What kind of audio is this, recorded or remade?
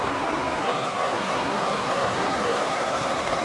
remade